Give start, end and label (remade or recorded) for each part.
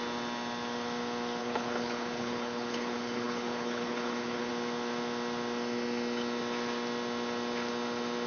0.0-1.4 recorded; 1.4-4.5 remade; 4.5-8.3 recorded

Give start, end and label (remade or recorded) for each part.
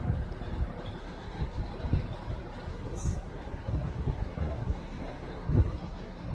0.0-1.0 recorded; 1.0-1.6 remade; 1.6-2.7 recorded; 2.7-6.3 remade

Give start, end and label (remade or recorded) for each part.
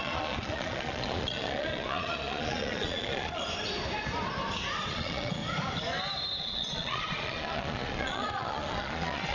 0.0-3.4 remade; 3.4-4.9 recorded; 4.9-5.4 remade; 5.4-6.4 recorded; 6.4-9.3 remade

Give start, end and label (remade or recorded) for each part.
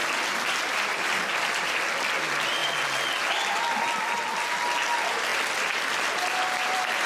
0.0-2.1 remade; 2.1-5.3 recorded; 5.3-7.1 remade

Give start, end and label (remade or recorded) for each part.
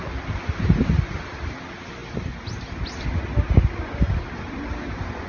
0.0-5.3 recorded